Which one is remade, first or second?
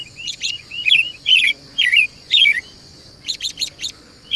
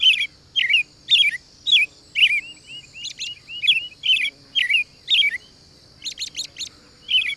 first